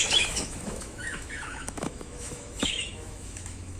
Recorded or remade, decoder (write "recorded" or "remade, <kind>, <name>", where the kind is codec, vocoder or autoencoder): remade, autoencoder, DAC-VAE